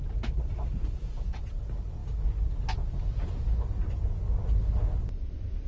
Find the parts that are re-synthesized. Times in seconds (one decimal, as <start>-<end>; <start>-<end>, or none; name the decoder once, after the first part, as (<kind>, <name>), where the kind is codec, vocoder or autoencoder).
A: none